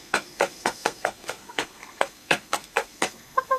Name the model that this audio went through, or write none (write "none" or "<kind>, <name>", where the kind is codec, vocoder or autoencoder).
codec, SNAC